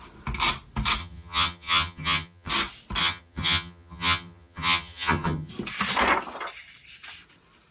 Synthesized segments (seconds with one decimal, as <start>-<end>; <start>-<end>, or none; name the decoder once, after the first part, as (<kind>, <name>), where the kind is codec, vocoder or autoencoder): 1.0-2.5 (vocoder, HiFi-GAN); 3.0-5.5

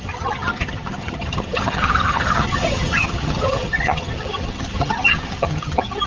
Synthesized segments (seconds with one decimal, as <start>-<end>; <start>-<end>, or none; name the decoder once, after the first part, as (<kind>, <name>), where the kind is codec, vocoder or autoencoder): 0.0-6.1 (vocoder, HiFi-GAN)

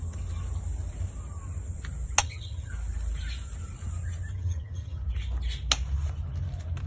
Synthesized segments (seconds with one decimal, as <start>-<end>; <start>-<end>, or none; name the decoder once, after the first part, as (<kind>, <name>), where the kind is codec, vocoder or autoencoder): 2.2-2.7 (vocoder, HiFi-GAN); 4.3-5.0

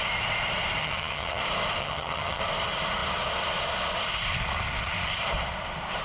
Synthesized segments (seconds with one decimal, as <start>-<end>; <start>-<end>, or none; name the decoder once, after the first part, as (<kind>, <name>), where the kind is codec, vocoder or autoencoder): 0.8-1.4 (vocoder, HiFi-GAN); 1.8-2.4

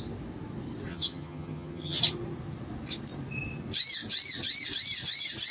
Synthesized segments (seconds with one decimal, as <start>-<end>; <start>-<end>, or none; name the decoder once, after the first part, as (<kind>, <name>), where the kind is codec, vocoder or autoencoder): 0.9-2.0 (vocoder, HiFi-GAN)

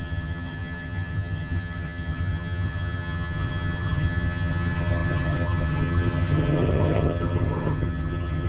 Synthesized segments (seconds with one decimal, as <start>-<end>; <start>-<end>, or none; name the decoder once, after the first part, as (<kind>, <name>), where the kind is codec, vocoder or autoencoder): 0.0-8.5 (vocoder, HiFi-GAN)

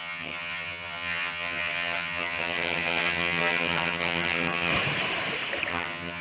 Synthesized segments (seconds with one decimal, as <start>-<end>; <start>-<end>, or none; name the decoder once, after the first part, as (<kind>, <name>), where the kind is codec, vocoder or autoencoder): 0.0-4.7 (vocoder, HiFi-GAN); 5.7-6.2

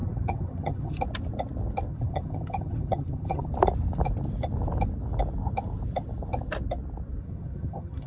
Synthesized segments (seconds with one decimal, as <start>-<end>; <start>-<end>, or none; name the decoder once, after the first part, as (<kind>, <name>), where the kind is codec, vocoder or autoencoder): 0.0-1.0 (vocoder, HiFi-GAN); 1.9-3.5; 7.2-8.1